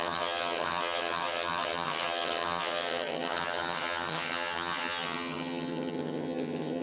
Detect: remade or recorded remade